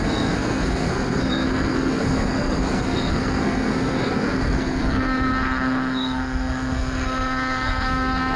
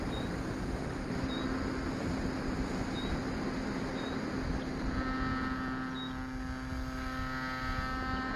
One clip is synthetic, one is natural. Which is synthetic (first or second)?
first